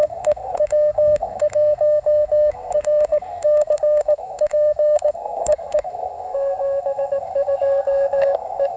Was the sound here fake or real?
fake